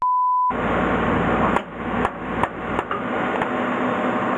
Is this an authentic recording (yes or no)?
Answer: yes